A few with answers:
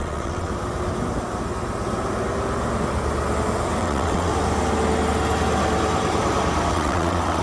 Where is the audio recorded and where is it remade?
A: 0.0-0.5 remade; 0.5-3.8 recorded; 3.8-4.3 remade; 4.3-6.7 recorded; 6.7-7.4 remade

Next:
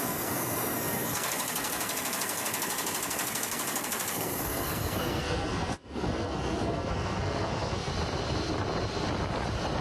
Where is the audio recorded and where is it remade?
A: 0.0-7.9 remade; 7.9-9.8 recorded

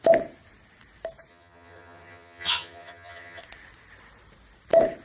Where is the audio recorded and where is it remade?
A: 0.0-1.3 recorded; 1.3-3.4 remade; 3.4-5.0 recorded

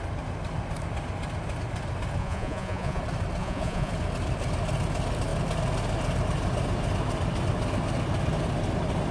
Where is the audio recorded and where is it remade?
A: 0.0-2.2 recorded; 2.2-3.0 remade; 3.0-3.4 recorded; 3.4-3.9 remade; 3.9-9.1 recorded

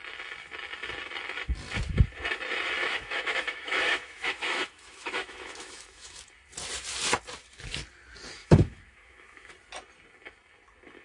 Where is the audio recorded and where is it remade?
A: 0.0-2.8 recorded; 2.8-6.2 remade; 6.2-8.4 recorded; 8.4-9.5 remade; 9.5-11.0 recorded